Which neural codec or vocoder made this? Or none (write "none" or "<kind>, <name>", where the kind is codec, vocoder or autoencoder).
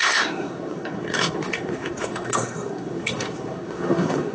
codec, SNAC